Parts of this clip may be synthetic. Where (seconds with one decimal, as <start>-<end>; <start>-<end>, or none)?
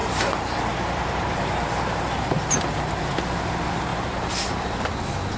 0.0-3.2; 3.9-5.0